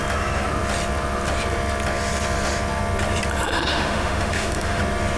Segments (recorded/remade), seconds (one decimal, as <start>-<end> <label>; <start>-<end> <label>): 0.0-3.7 recorded; 3.7-4.8 remade; 4.8-5.2 recorded

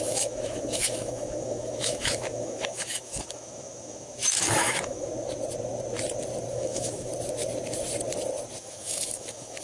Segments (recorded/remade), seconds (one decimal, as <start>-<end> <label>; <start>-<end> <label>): 0.0-5.1 remade; 5.1-6.5 recorded; 6.5-7.1 remade; 7.1-8.6 recorded; 8.6-9.6 remade

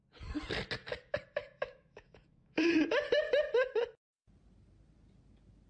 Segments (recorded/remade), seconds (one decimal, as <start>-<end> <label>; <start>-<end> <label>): 0.0-1.4 recorded; 1.4-2.7 remade; 2.7-5.7 recorded

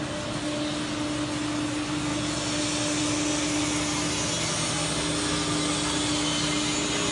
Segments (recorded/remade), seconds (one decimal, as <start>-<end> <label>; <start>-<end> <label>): 0.0-7.1 recorded

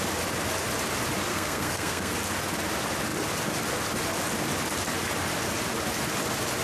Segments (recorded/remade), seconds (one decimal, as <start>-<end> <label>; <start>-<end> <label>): 0.0-1.3 recorded; 1.3-2.1 remade; 2.1-6.6 recorded